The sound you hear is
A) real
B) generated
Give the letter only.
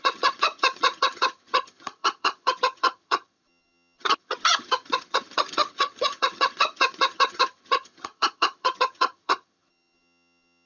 B